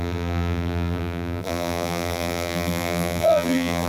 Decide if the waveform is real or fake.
fake